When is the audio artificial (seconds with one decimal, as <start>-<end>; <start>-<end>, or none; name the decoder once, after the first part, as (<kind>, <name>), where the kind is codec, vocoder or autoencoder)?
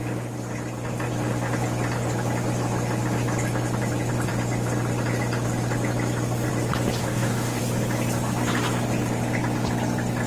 7.0-7.6 (codec, DAC)